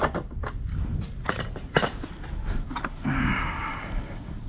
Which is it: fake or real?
real